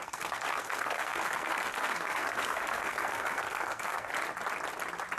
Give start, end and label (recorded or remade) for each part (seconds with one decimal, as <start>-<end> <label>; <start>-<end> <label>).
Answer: 0.0-4.1 remade; 4.1-5.2 recorded